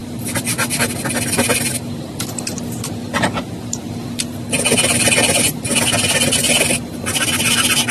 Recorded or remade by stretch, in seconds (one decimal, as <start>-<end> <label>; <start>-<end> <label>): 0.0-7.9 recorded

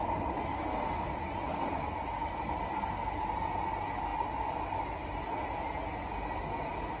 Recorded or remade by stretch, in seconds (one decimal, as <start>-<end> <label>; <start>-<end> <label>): 0.0-7.0 recorded

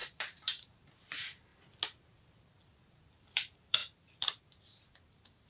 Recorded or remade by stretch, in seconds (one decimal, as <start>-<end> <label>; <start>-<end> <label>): 0.0-1.5 remade; 1.5-2.4 recorded; 2.4-5.5 remade

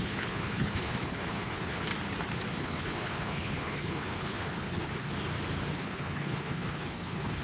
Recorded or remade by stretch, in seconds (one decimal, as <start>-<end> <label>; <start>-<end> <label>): 0.0-1.9 remade; 1.9-2.6 recorded; 2.6-5.1 remade; 5.1-5.7 recorded; 5.7-7.4 remade

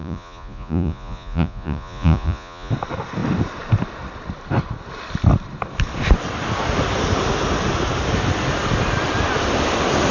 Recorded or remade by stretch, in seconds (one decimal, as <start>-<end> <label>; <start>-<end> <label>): 0.0-2.7 remade; 2.7-10.1 recorded